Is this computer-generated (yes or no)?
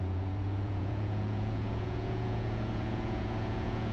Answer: yes